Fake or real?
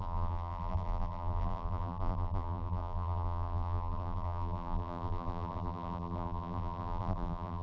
fake